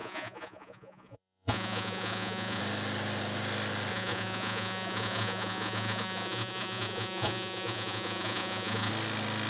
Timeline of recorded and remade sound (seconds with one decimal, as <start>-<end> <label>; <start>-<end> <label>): 0.0-2.6 remade; 2.6-3.9 recorded; 3.9-8.9 remade; 8.9-9.5 recorded